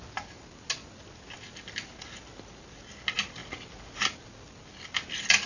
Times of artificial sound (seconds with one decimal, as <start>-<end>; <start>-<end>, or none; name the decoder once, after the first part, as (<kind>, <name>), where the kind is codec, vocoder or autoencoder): none